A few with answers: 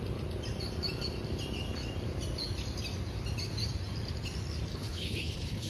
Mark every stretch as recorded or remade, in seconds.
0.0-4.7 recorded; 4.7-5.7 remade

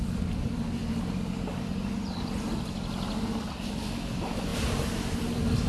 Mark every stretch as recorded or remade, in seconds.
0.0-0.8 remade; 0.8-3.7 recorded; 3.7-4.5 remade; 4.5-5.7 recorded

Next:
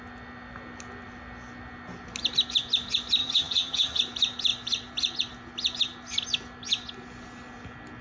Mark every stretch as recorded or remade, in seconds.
0.0-3.2 recorded; 3.2-4.0 remade; 4.0-8.0 recorded